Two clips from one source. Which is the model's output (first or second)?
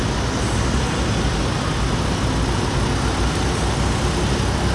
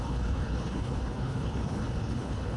second